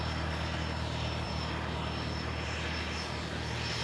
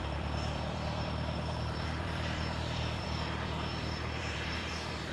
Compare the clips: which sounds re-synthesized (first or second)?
second